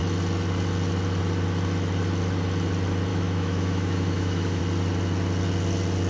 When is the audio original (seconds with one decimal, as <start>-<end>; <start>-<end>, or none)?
0.0-3.1; 4.6-6.1